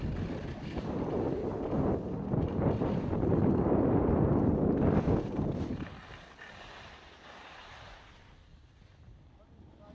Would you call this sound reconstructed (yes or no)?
no